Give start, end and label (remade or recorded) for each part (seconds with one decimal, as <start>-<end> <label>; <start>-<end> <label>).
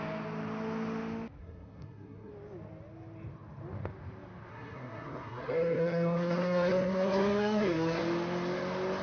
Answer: 0.0-1.4 recorded; 1.4-2.3 remade; 2.3-4.5 recorded; 4.5-8.0 remade; 8.0-9.0 recorded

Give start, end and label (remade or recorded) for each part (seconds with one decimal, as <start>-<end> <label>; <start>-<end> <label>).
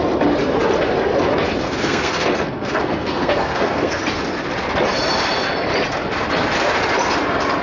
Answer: 0.0-1.6 recorded; 1.6-4.0 remade; 4.0-7.6 recorded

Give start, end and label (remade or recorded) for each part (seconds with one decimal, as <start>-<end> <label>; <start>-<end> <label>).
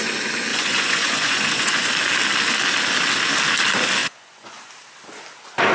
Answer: 0.0-0.5 recorded; 0.5-1.9 remade; 1.9-4.0 recorded; 4.0-4.7 remade; 4.7-5.7 recorded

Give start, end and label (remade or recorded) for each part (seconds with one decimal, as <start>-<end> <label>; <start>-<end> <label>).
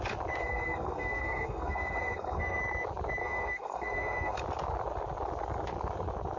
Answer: 0.0-0.4 recorded; 0.4-2.6 remade; 2.6-3.2 recorded; 3.2-4.4 remade; 4.4-6.4 recorded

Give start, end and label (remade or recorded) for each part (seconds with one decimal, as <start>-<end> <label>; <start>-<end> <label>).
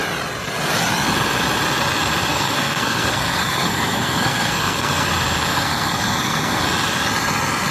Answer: 0.0-2.3 recorded; 2.3-5.1 remade; 5.1-5.5 recorded; 5.5-6.6 remade; 6.6-7.7 recorded